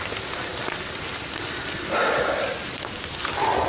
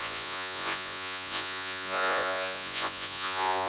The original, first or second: first